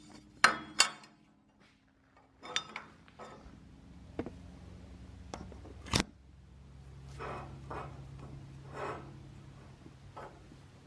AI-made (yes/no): no